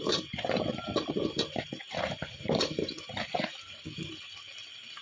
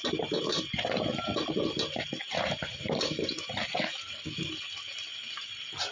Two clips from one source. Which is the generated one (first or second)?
first